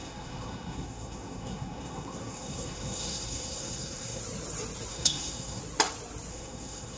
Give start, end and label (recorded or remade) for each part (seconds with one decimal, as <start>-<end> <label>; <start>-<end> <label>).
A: 0.0-4.2 remade; 4.2-4.9 recorded; 4.9-5.6 remade; 5.6-6.3 recorded; 6.3-7.0 remade